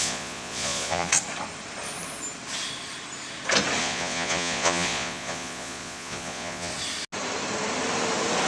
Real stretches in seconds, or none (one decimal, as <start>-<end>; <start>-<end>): 1.1-3.8; 6.7-8.5